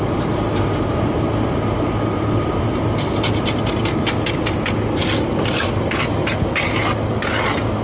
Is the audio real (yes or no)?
yes